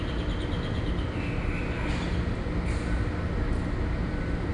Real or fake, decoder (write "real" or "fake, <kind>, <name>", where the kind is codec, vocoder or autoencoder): real